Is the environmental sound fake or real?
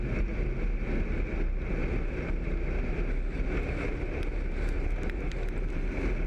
real